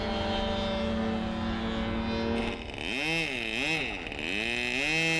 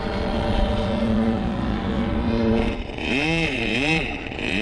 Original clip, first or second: first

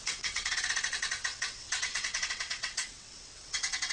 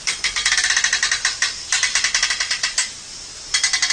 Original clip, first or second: second